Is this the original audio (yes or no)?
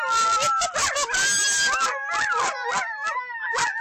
yes